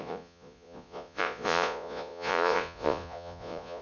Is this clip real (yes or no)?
no